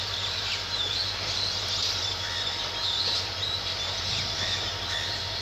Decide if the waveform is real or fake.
real